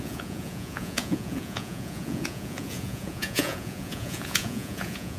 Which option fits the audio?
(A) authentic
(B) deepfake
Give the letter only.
B